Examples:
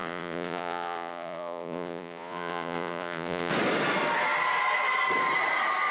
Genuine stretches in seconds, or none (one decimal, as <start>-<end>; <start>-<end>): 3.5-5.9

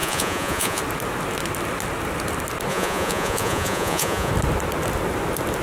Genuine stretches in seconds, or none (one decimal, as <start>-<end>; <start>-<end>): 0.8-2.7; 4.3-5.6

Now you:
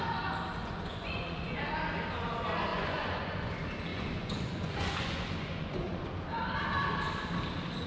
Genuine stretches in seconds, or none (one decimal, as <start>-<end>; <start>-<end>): 0.0-0.6; 1.6-2.7; 3.5-3.9; 6.1-7.9

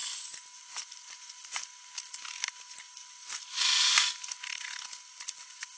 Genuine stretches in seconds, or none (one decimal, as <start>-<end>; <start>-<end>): 0.0-0.6; 1.6-5.1

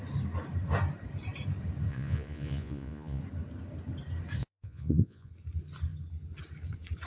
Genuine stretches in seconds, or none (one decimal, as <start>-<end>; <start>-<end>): 0.0-1.9; 3.2-4.4; 5.3-7.1

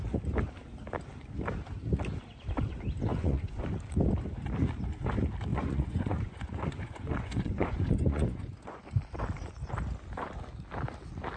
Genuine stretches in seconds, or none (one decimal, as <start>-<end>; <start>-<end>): 0.0-3.1; 3.6-5.5; 8.8-11.4